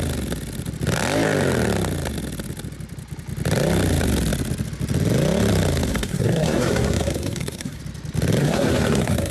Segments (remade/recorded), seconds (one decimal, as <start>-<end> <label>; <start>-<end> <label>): 0.0-5.9 recorded; 5.9-7.8 remade; 7.8-8.4 recorded; 8.4-9.3 remade